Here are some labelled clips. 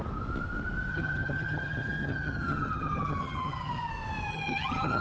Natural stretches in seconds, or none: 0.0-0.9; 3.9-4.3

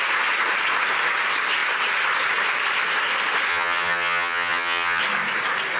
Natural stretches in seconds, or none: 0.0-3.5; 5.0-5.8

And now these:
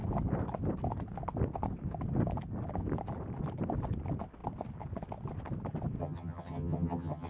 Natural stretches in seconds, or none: 0.0-6.0

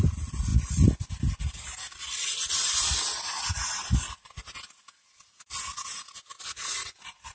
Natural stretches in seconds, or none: 0.0-7.3